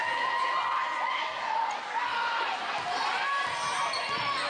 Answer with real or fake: real